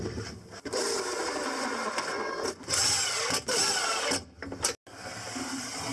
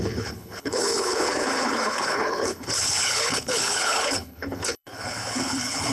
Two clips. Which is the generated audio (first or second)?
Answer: second